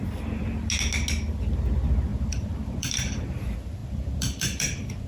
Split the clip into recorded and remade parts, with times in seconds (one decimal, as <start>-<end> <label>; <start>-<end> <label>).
0.0-2.1 recorded; 2.1-3.3 remade; 3.3-3.8 recorded; 3.8-5.1 remade